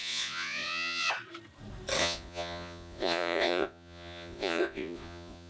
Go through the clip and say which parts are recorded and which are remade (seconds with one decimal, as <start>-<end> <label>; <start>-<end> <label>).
0.0-1.1 remade; 1.1-2.0 recorded; 2.0-5.5 remade